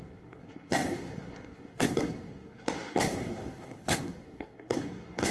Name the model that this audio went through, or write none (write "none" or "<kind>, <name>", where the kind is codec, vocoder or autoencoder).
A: codec, SNAC